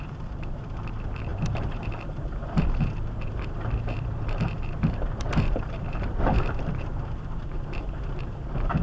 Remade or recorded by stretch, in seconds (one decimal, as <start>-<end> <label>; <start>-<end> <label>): 0.0-8.8 remade